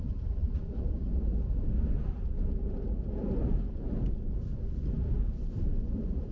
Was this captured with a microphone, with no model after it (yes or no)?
no